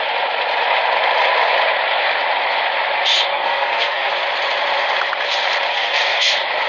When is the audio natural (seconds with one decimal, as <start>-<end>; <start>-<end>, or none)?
0.0-3.3; 4.1-5.7; 6.3-6.7